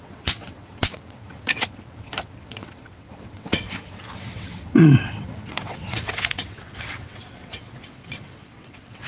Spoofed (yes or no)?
yes